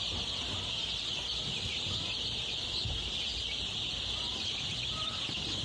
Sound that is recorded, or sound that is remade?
recorded